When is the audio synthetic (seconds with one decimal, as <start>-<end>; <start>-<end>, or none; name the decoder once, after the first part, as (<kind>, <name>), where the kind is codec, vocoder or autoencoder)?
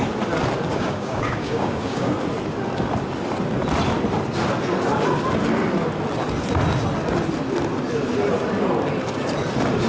0.7-2.1 (codec, DAC)